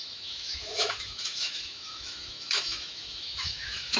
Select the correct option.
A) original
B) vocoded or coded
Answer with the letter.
B